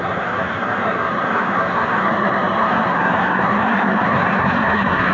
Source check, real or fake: fake